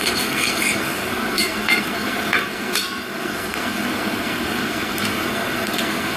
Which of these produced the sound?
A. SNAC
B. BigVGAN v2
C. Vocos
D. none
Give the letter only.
A